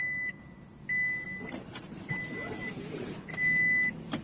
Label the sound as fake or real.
real